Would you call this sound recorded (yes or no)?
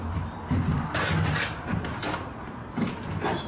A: yes